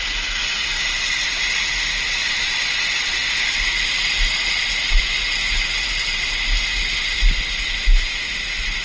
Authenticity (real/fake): real